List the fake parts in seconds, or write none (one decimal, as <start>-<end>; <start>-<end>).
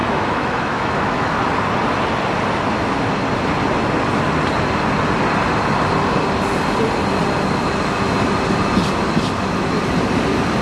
0.0-1.4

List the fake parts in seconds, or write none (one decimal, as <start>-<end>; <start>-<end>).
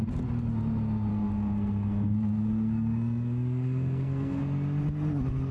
1.1-4.4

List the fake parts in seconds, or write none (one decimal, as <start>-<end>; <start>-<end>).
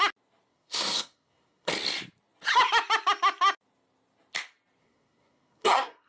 0.5-1.7; 4.8-6.1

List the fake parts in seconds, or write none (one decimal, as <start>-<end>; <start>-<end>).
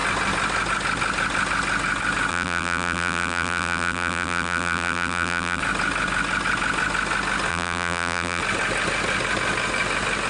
2.3-5.6; 7.5-8.4